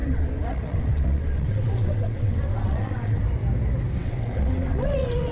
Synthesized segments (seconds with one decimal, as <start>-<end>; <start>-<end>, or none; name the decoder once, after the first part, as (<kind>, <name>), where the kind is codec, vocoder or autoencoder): 0.0-3.2 (vocoder, WaveNeXt); 4.0-5.3